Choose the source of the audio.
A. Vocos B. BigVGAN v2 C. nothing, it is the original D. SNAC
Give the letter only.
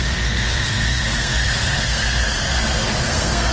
D